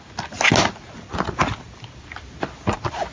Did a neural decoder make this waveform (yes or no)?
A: no